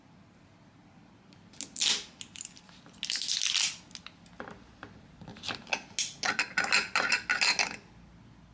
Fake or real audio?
real